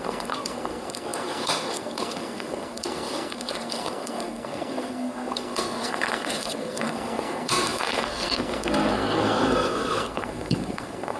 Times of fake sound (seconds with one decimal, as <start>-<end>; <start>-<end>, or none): 0.0-11.2